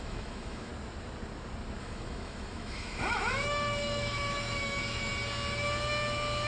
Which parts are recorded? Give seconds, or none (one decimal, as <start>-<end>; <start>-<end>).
0.7-1.8; 5.1-6.5